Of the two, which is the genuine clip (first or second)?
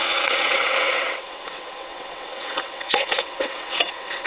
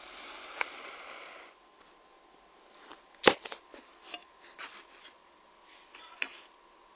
second